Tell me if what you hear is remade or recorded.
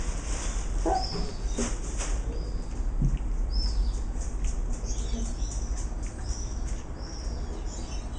recorded